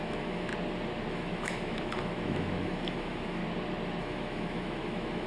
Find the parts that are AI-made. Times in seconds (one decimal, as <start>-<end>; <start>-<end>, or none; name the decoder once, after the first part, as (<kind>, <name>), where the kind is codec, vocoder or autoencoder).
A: 0.0-0.5 (autoencoder, DAC-VAE); 1.1-3.4; 4.0-5.3